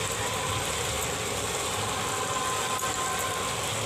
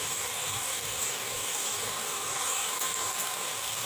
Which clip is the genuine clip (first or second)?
first